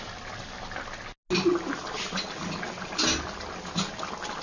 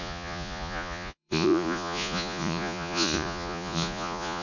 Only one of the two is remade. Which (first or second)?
second